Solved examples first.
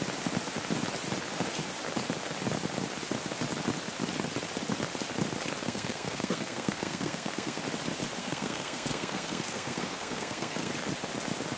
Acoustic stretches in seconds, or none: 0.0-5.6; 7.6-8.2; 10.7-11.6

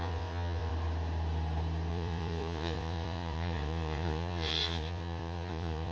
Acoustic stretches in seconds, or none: 0.7-1.9

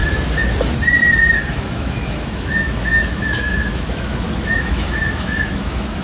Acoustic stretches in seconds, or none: 0.0-1.5